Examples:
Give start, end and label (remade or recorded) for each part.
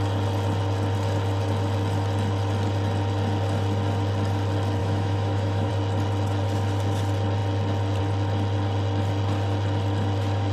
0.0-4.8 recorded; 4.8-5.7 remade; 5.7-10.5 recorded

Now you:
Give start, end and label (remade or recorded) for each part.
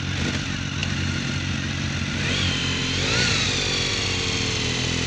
0.0-5.1 recorded